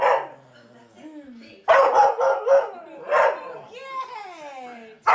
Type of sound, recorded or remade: recorded